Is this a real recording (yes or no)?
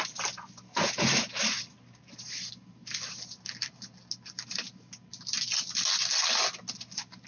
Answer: yes